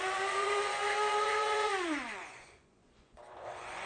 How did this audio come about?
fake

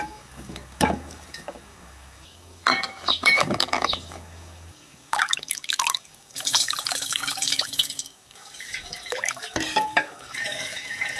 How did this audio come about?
fake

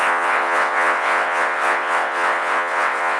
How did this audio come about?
fake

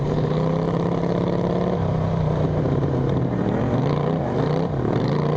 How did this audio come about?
fake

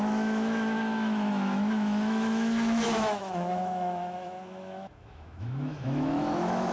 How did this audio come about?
fake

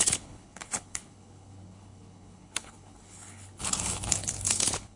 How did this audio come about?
fake